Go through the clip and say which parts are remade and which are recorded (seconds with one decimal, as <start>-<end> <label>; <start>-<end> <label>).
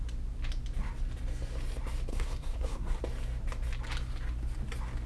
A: 0.0-2.1 recorded; 2.1-3.0 remade; 3.0-5.1 recorded